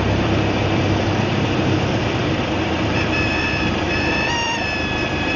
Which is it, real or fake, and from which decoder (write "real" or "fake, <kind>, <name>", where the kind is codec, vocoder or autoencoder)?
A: fake, vocoder, BigVGAN v2